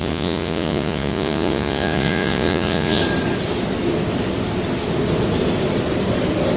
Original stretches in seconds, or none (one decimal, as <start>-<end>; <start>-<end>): 3.0-6.6